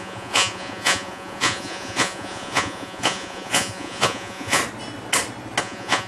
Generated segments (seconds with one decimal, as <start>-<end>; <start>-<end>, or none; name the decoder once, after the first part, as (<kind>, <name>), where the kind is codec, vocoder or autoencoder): 0.0-4.6 (vocoder, Vocos); 5.6-6.1